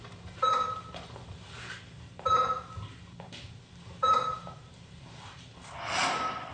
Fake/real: real